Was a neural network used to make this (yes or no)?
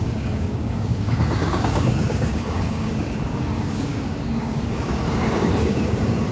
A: yes